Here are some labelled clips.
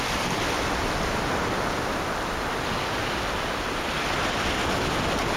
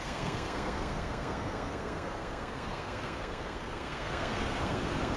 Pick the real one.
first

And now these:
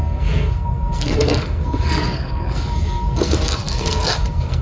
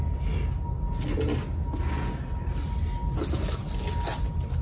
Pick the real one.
second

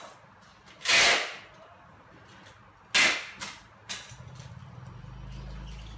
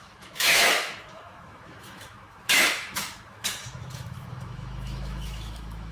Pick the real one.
first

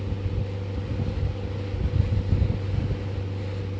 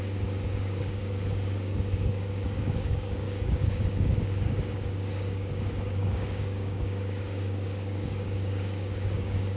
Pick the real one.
first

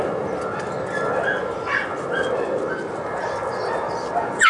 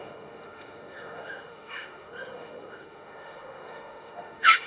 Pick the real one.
first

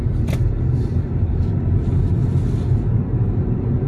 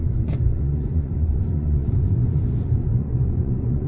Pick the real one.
first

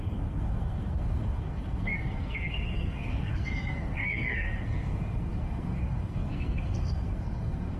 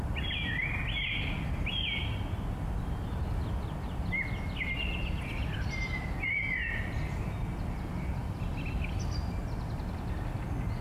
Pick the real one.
second